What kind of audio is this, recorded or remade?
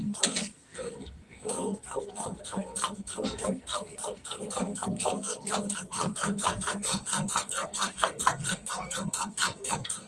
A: remade